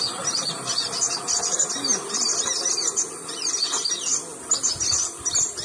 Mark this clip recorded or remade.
recorded